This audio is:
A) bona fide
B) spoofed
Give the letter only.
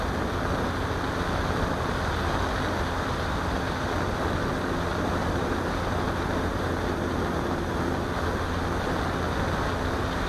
A